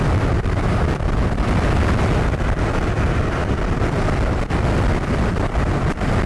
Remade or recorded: recorded